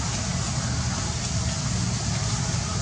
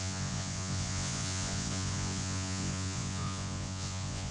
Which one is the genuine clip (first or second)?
first